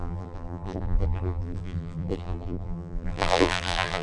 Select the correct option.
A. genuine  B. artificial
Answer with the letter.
B